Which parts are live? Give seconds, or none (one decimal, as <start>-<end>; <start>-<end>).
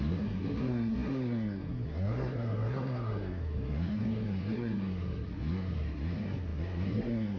none